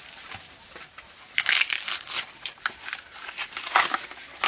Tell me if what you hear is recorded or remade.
recorded